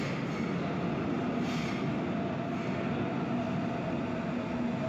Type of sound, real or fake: real